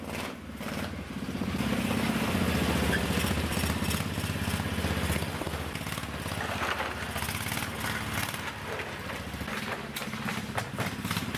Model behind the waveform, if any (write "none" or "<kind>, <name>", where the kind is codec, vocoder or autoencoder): none